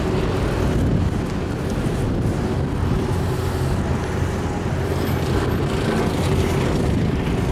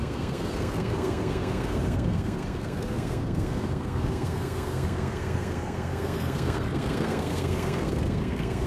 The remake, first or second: second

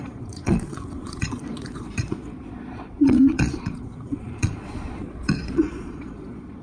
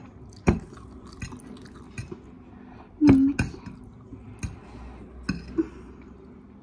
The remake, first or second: first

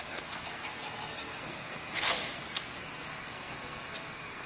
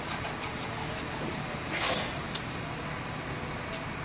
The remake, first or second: first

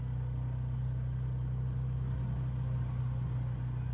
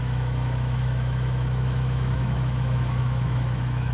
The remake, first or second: second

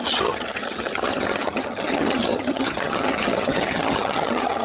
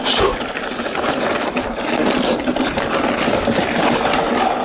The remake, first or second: first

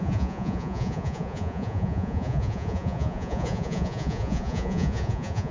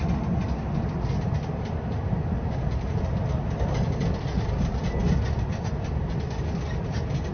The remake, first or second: first